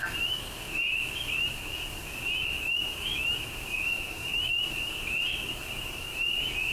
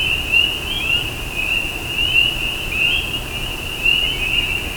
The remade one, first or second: first